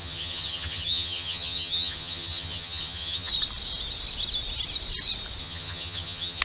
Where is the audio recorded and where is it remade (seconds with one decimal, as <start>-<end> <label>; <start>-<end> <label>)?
0.0-3.3 remade; 3.3-5.4 recorded; 5.4-6.4 remade

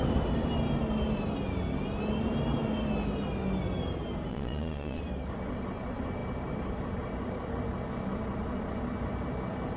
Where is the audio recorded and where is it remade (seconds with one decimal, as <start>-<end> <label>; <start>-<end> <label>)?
0.0-4.3 recorded; 4.3-5.0 remade; 5.0-9.8 recorded

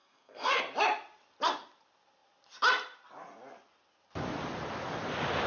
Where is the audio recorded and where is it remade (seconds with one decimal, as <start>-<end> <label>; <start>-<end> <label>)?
0.0-0.6 remade; 0.6-5.5 recorded

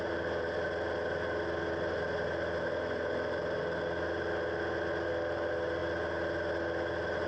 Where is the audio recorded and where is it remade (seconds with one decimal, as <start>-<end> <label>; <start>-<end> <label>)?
0.0-7.3 recorded